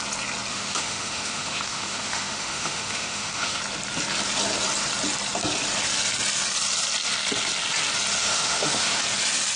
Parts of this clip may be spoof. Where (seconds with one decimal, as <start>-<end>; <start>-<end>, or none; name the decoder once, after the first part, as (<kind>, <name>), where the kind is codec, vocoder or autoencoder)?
0.5-3.6 (autoencoder, DAC-VAE); 8.2-9.0